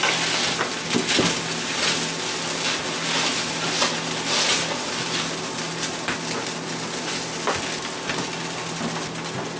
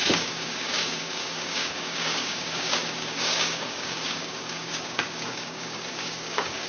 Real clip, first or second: first